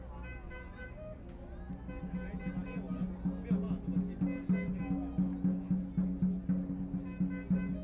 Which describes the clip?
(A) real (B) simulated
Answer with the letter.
A